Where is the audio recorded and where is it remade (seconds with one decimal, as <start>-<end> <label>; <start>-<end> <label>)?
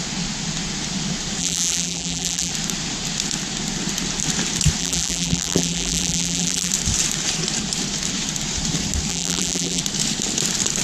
0.0-1.4 recorded; 1.4-2.5 remade; 2.5-4.8 recorded; 4.8-6.7 remade; 6.7-9.1 recorded; 9.1-9.8 remade; 9.8-10.8 recorded